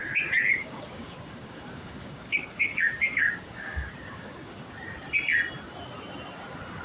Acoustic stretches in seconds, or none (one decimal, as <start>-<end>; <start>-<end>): 0.0-0.5; 4.6-6.8